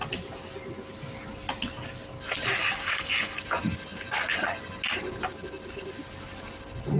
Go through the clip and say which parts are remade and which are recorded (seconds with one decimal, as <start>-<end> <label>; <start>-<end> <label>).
0.0-2.6 recorded; 2.6-3.4 remade; 3.4-7.0 recorded